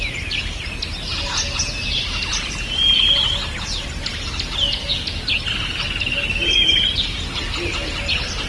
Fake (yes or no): no